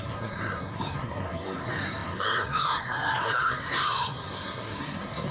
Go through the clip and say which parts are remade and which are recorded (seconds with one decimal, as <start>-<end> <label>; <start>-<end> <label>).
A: 0.0-5.3 remade